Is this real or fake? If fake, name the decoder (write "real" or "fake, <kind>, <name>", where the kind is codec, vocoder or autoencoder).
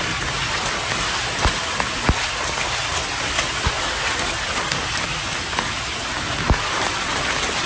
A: real